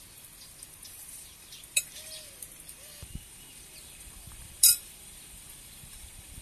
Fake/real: fake